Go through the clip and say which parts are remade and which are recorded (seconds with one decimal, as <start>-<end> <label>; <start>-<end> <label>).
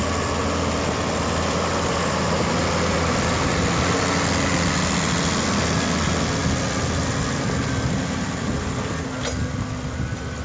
0.0-10.4 recorded